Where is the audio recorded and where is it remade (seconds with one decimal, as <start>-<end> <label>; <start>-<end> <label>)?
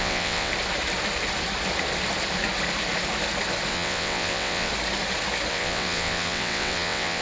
0.0-0.5 remade; 0.5-3.7 recorded; 3.7-4.7 remade; 4.7-5.5 recorded; 5.5-7.2 remade